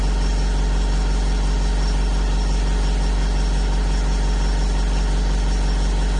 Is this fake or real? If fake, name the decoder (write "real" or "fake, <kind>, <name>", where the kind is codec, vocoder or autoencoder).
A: real